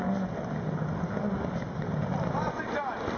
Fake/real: real